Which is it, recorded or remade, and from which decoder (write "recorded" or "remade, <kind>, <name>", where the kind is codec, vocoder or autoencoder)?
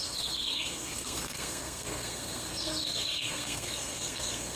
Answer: remade, codec, SNAC